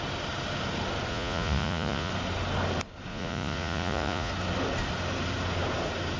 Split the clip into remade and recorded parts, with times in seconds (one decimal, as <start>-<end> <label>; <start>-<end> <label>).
0.0-1.1 recorded; 1.1-2.1 remade; 2.1-3.1 recorded; 3.1-4.3 remade; 4.3-6.2 recorded